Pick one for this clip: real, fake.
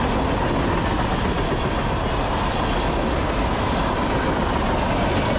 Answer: real